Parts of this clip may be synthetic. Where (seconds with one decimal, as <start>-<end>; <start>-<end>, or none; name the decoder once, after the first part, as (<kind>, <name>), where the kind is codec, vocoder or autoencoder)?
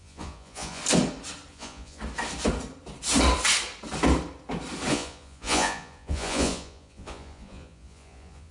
0.0-0.8 (vocoder, Vocos); 1.5-2.0; 4.9-8.5